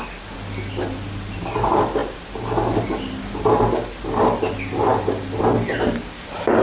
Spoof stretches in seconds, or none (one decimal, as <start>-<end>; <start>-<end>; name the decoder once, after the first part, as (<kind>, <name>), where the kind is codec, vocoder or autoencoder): none